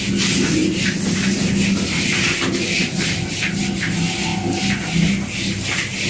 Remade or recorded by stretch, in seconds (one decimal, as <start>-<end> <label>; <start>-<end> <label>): 0.0-0.6 remade; 0.6-3.6 recorded; 3.6-6.1 remade